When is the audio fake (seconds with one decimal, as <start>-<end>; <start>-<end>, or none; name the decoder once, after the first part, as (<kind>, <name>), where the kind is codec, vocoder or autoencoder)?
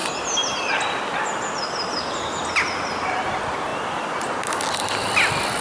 none